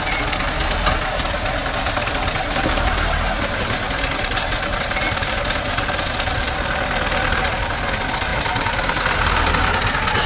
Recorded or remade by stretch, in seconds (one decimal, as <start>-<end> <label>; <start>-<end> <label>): 0.0-8.3 recorded; 8.3-9.0 remade; 9.0-10.3 recorded